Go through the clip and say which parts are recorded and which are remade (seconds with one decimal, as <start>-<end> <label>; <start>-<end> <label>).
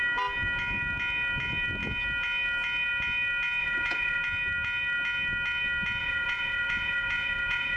0.0-3.6 recorded; 3.6-4.2 remade; 4.2-6.0 recorded; 6.0-7.8 remade